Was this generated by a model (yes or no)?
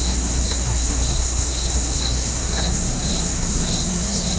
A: yes